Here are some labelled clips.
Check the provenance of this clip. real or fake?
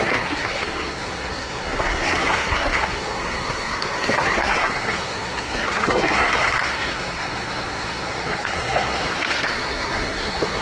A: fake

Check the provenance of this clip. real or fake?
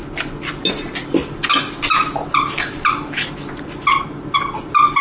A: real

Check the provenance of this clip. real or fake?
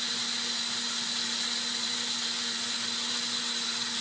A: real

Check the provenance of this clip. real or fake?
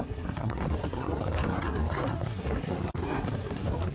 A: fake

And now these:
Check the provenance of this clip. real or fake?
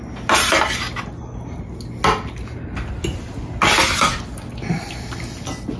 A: real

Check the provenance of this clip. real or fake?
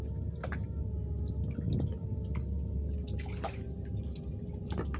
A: real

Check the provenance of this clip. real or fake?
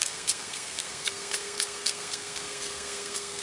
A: fake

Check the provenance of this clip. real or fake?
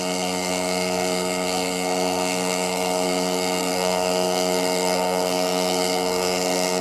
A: fake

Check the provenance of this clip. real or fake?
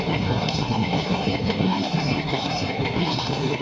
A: fake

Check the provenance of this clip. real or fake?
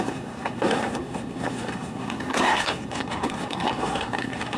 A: fake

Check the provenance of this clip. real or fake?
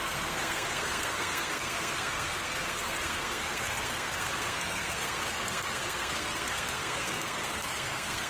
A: fake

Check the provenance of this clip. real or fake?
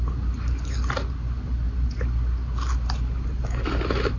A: real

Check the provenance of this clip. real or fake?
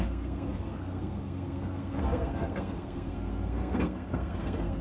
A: fake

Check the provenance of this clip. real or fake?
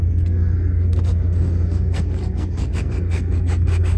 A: fake